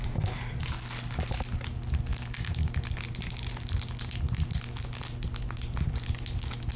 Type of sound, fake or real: real